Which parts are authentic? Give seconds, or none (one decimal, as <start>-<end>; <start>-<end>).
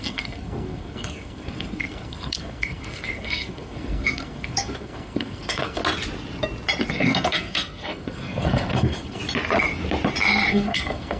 5.8-6.9; 9.2-10.5